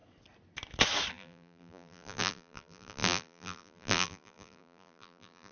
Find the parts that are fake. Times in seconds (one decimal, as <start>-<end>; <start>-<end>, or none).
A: 1.1-5.5